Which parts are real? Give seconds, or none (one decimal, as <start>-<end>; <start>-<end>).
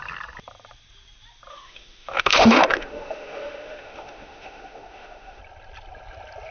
0.0-1.5; 5.4-6.5